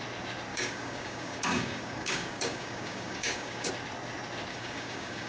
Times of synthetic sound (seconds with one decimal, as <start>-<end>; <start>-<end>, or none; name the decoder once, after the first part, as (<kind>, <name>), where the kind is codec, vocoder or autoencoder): 0.5-3.7 (codec, DAC); 4.5-5.3

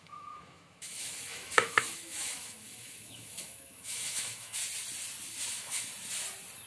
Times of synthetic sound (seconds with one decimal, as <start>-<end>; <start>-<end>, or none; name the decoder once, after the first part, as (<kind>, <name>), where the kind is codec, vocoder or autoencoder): 0.0-4.6 (autoencoder, DAC-VAE); 5.5-5.9